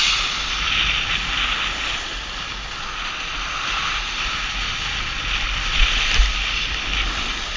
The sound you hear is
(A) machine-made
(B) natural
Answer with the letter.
B